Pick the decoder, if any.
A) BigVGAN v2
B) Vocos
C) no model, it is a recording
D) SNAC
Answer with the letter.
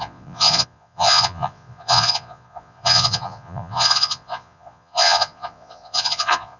B